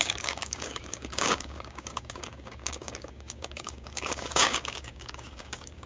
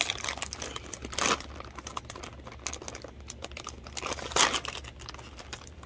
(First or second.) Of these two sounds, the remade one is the first